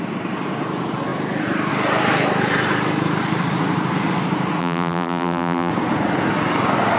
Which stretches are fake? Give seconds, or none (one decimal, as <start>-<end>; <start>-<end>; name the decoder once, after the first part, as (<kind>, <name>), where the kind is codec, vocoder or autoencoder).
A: 4.6-5.7 (vocoder, BigVGAN v2)